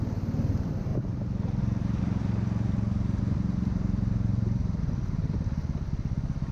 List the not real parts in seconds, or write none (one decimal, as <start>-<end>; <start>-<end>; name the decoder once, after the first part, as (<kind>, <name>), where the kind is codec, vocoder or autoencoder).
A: 0.0-0.9 (vocoder, BigVGAN v2); 1.6-6.5